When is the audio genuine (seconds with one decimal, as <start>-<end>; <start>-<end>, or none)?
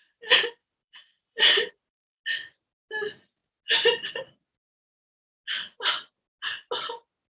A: 0.0-0.6; 2.2-7.3